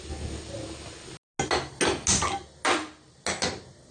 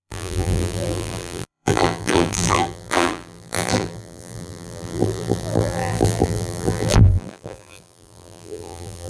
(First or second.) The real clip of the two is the first